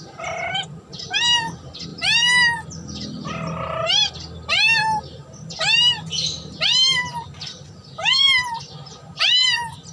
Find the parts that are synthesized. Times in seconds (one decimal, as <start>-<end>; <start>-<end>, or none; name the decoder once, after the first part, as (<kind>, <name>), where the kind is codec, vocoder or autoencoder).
none